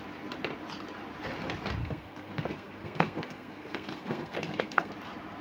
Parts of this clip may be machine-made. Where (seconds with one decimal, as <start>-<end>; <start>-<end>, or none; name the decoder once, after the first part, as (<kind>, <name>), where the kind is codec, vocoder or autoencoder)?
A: 1.8-4.9 (codec, SNAC)